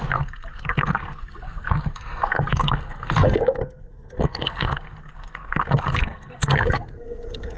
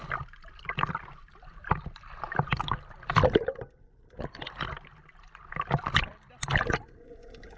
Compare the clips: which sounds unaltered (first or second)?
second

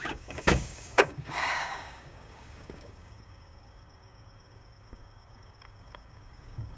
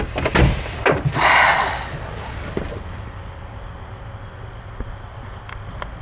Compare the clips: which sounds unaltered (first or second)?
second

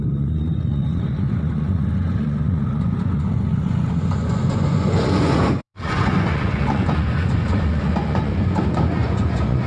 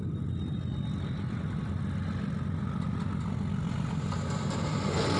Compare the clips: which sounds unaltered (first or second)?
second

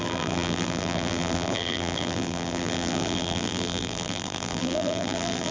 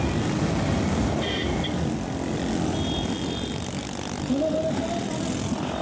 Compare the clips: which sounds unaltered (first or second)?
second